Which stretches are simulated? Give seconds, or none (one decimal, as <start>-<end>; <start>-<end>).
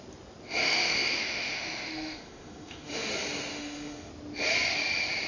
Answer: 0.6-3.1; 3.5-4.1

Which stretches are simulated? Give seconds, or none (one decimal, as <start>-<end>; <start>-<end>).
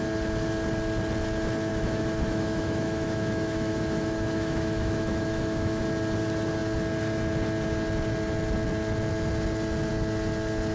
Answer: 1.7-5.8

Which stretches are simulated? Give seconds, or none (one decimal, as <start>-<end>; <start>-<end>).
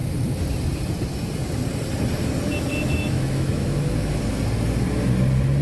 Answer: 2.7-4.2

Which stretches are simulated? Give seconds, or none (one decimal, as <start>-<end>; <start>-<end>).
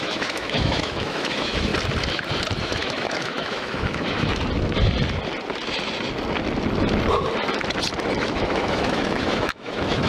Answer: 0.0-1.7; 2.6-4.3; 8.2-10.1